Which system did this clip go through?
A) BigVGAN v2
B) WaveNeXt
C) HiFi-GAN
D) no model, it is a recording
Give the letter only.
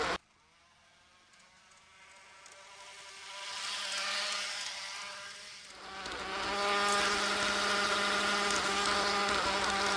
D